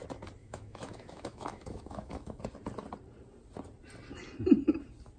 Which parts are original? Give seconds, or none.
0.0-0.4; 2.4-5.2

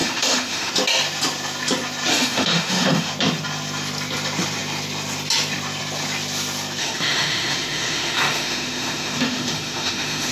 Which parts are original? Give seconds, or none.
0.7-2.1; 3.1-6.8

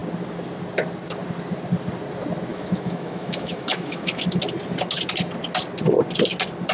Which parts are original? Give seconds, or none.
0.0-2.5; 4.2-6.7

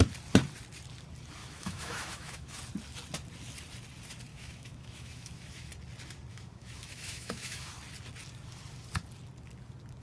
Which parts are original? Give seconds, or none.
0.0-1.4; 2.6-4.3; 5.7-6.3; 7.8-10.0

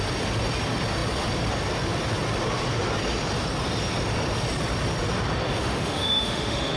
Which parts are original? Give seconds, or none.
0.0-5.6